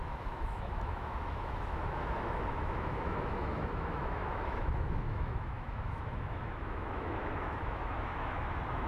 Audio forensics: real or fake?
fake